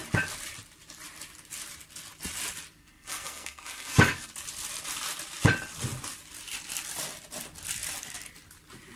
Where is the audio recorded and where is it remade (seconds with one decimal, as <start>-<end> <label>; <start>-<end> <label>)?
0.0-2.8 recorded; 2.8-4.3 remade; 4.3-9.0 recorded